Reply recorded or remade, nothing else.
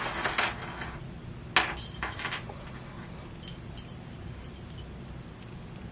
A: recorded